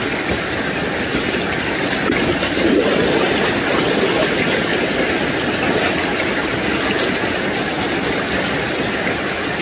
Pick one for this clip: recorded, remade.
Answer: recorded